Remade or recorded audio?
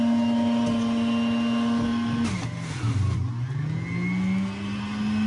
recorded